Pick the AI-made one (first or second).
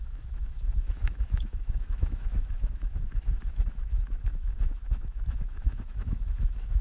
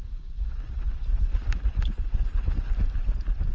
first